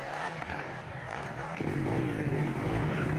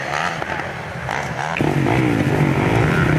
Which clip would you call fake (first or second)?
first